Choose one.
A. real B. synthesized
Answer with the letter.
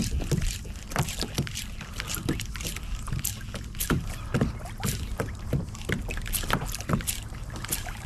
A